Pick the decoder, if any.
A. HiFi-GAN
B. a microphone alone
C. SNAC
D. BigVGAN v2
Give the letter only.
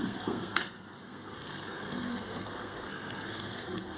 C